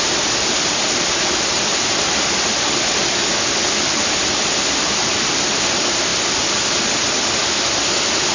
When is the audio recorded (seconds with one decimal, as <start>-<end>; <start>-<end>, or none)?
0.0-8.3